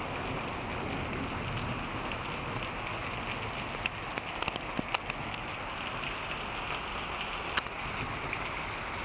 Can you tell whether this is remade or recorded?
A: recorded